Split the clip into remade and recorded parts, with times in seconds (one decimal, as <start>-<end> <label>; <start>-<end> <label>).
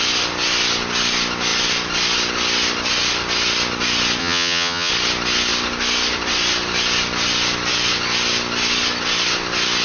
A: 0.0-4.2 recorded; 4.2-4.9 remade; 4.9-9.8 recorded